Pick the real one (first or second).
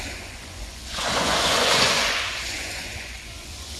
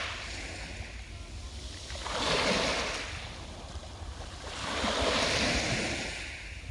second